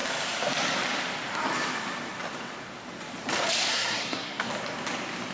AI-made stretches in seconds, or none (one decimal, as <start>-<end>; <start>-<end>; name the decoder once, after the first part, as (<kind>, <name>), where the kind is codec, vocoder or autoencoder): 3.7-4.5 (codec, SNAC)